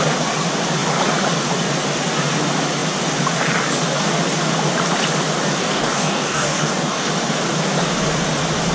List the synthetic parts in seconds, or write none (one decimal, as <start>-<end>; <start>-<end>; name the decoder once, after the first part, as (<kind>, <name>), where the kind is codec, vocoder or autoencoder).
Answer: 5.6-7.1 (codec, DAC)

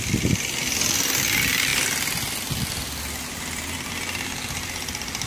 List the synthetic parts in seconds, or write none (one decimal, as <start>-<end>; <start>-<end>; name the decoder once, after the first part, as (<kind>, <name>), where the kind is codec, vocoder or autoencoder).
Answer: none

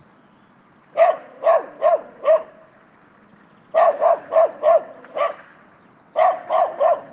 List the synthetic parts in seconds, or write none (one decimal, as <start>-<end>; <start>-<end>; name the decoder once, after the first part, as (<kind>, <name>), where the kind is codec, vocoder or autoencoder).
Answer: none

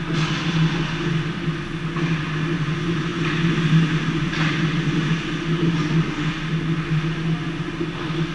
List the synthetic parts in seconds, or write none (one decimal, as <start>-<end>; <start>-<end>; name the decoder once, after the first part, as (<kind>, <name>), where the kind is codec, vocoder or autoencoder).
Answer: none